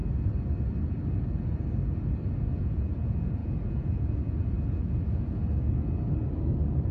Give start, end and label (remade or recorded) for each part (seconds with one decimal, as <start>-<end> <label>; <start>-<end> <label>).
0.0-2.6 recorded; 2.6-5.4 remade; 5.4-6.9 recorded